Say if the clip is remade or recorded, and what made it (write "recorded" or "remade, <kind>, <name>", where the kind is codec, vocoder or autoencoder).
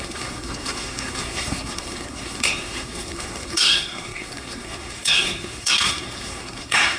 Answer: remade, codec, SNAC